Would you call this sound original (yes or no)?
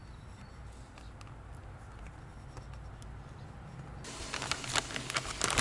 yes